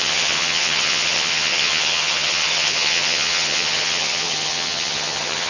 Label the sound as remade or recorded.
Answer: remade